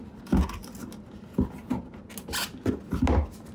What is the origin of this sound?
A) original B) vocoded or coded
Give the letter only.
A